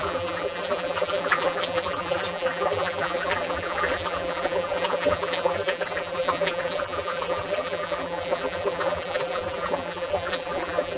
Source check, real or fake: fake